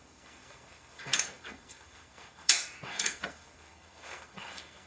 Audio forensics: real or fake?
fake